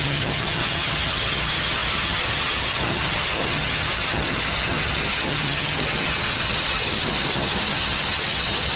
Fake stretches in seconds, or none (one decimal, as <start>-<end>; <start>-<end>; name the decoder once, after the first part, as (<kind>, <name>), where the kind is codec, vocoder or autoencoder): 0.0-8.8 (vocoder, HiFi-GAN)